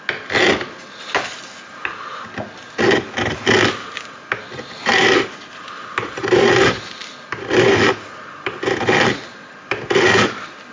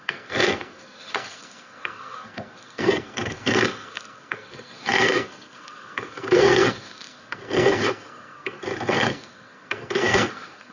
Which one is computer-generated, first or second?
second